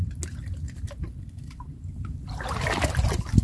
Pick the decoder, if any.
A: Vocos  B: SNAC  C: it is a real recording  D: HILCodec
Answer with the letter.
C